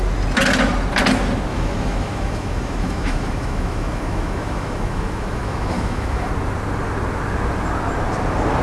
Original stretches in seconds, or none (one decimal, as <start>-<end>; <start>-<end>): 0.0-1.5; 6.3-8.6